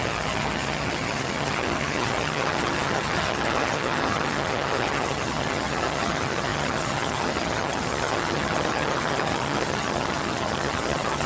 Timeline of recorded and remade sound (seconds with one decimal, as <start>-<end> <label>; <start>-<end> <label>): 0.0-11.3 remade